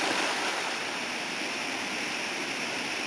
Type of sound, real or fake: fake